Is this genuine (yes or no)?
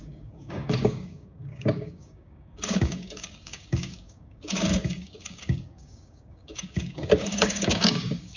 no